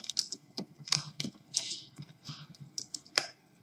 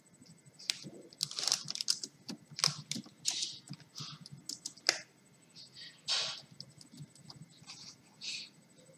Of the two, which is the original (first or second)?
second